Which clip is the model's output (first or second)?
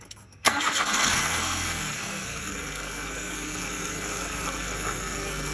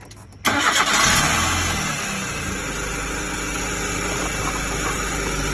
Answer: first